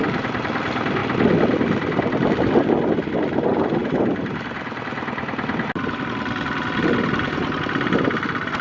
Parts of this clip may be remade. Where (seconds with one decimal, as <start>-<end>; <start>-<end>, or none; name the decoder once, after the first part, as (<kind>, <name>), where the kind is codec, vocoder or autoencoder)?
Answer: 3.8-4.3 (vocoder, BigVGAN v2)